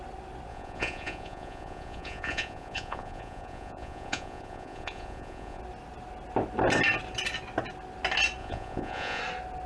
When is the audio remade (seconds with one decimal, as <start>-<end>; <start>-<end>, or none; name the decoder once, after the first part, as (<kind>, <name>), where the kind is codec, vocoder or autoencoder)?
0.5-5.6 (vocoder, Vocos); 8.4-9.2

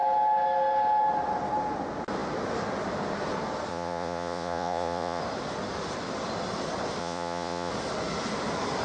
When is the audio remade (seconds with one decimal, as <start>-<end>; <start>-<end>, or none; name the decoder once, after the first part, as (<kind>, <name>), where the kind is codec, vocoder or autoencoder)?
3.7-5.2 (vocoder, Vocos); 7.0-7.7